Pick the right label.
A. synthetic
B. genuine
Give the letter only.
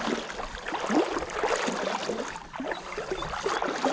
B